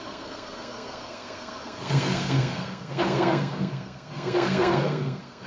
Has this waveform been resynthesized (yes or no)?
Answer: yes